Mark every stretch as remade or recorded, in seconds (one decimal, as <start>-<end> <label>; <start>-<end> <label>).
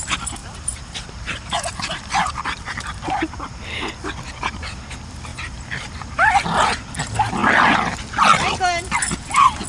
0.0-0.4 recorded; 0.4-3.9 remade; 3.9-5.3 recorded; 5.3-6.9 remade; 6.9-9.7 recorded